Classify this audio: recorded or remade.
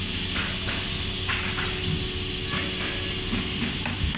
recorded